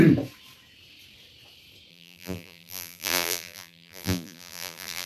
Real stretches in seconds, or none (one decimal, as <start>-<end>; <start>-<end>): 0.0-1.9